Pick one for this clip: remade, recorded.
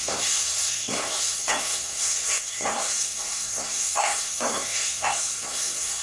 remade